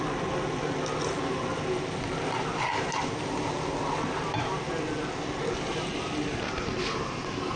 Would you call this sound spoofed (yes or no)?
no